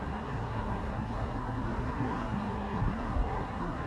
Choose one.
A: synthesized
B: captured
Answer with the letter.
A